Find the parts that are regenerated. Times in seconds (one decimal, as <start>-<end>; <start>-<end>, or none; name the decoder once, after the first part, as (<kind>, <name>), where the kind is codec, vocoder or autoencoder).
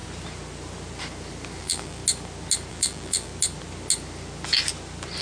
1.6-2.0 (vocoder, BigVGAN v2); 2.7-3.3